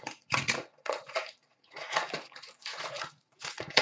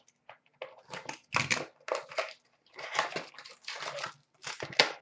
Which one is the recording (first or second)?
second